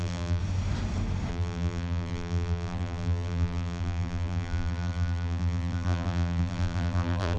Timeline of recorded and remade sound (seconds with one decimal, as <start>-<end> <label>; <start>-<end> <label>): 0.0-0.4 remade; 0.4-1.3 recorded; 1.3-7.4 remade